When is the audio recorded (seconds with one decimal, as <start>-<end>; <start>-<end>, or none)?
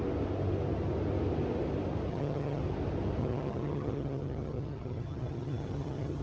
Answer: 0.0-2.1; 2.6-3.2